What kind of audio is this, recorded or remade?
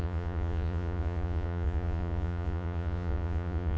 remade